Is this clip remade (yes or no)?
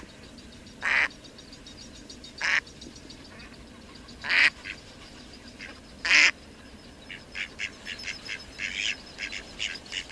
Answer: no